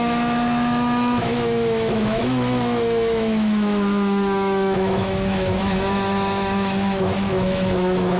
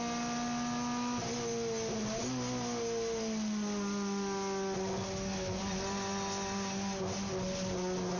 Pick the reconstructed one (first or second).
first